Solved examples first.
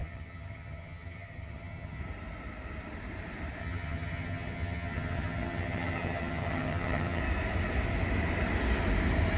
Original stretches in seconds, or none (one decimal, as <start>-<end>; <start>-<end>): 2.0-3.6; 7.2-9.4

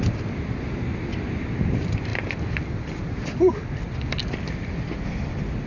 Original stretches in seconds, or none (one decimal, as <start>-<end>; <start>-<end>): 0.0-2.1; 2.7-3.5; 4.2-5.7

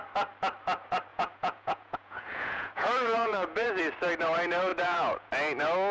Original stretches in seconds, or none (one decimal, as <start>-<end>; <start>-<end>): 0.0-1.1; 3.8-4.7; 5.3-5.9